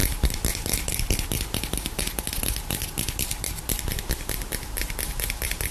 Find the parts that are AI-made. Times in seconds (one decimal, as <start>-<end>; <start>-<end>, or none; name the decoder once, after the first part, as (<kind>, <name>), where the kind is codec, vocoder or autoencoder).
none